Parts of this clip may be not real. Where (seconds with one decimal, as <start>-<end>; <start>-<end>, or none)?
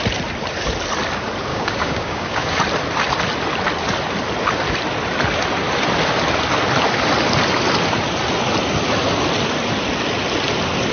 1.5-2.6